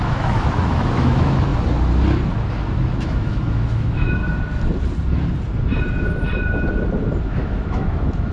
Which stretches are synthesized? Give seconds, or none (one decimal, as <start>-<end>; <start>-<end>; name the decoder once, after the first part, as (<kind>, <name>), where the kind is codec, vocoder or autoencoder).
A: 0.0-1.5 (autoencoder, DAC-VAE); 2.9-4.2; 7.2-8.3